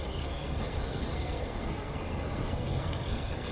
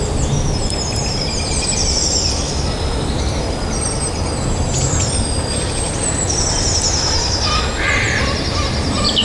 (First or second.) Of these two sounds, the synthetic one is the first